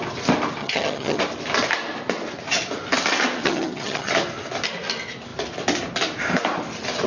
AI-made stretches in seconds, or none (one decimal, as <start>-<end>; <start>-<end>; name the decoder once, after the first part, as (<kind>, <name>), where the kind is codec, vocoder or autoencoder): 0.6-1.2 (vocoder, HiFi-GAN); 3.4-4.1